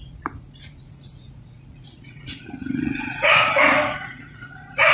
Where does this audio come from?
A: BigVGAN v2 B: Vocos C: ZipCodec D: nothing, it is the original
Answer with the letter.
B